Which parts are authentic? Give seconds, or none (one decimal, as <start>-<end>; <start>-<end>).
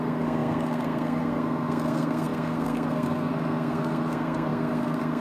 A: none